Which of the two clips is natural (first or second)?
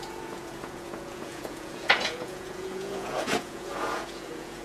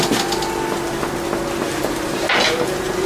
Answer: second